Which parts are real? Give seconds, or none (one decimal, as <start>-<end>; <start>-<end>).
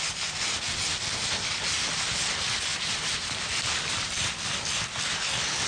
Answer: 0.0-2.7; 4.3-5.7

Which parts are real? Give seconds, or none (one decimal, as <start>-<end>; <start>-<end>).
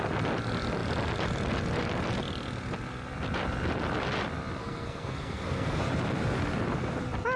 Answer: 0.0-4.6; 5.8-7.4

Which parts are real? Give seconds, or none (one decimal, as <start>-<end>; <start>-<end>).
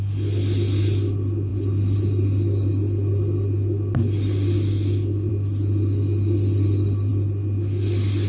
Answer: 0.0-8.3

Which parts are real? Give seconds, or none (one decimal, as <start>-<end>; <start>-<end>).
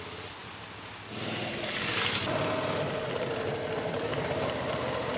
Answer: 0.0-5.2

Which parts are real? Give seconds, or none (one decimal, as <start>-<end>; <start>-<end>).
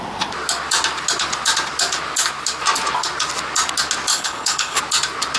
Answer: 0.0-4.1; 4.8-5.4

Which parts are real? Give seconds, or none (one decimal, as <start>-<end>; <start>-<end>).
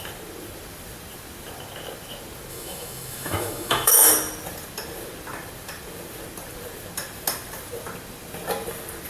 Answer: 0.0-2.5; 4.1-9.1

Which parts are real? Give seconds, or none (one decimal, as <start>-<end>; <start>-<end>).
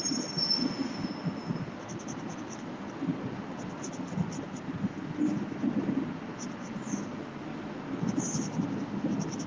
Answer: 0.0-9.5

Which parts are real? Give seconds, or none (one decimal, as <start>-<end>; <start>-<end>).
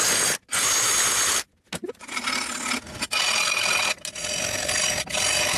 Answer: 0.0-5.6